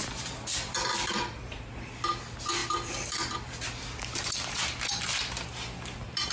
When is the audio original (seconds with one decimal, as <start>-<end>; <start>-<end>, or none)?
1.4-2.6; 3.7-6.3